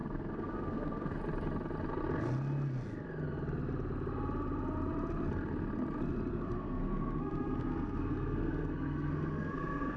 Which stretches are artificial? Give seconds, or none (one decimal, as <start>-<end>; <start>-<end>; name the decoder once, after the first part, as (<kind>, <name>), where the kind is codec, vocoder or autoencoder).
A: 0.0-1.2 (codec, SNAC); 6.3-10.0